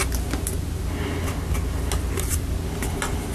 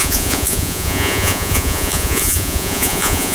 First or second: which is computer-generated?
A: second